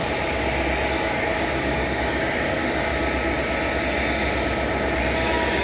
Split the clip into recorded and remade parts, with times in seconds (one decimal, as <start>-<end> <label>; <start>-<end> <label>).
0.0-0.9 recorded; 0.9-2.9 remade; 2.9-3.8 recorded; 3.8-4.2 remade; 4.2-5.0 recorded; 5.0-5.6 remade